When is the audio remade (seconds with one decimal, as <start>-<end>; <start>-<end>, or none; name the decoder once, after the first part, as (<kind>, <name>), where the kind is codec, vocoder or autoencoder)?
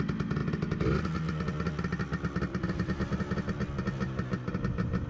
0.4-3.2 (vocoder, BigVGAN v2)